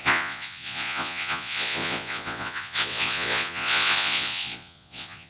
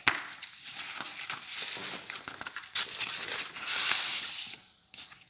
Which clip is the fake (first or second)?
first